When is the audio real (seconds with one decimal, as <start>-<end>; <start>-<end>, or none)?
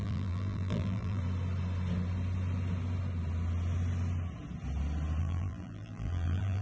1.2-5.2